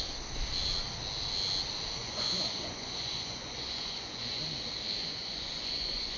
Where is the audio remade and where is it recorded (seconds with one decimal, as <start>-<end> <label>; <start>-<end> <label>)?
0.0-2.0 recorded; 2.0-4.4 remade; 4.4-5.0 recorded; 5.0-6.2 remade